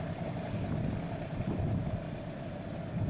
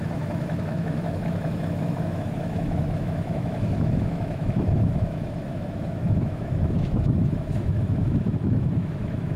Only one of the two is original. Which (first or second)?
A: first